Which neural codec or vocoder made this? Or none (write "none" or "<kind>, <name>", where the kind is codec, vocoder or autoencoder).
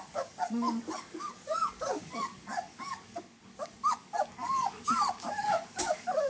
codec, DAC